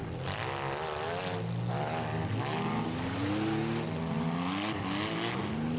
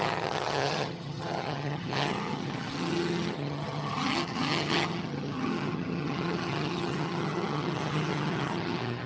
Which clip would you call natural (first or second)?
first